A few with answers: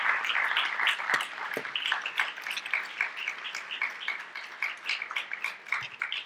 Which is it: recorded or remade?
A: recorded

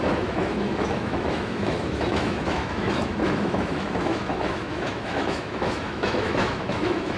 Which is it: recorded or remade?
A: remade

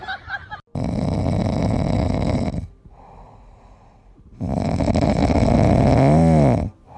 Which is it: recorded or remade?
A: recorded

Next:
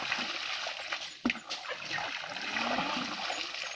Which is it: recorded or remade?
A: recorded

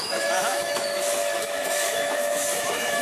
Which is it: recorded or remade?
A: remade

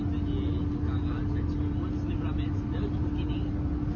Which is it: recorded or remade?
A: recorded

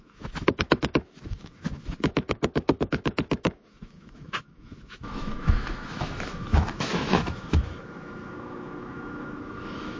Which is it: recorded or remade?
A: remade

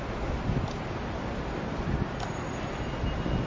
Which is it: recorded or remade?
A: recorded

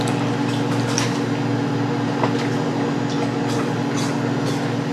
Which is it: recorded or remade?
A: recorded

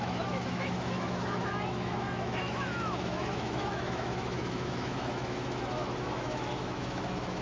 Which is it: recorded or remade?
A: remade